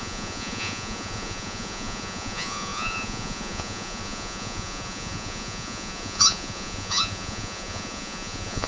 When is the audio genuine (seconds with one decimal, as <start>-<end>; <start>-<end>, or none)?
none